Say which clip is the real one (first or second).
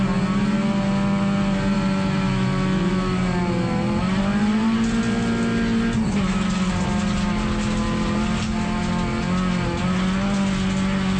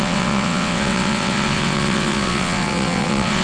first